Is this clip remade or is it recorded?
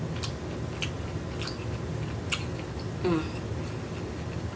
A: recorded